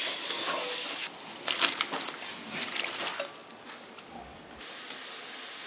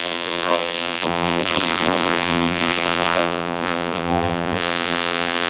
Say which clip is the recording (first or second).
first